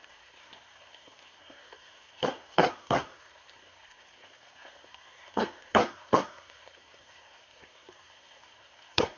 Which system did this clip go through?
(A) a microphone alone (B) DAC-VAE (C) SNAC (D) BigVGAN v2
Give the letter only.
C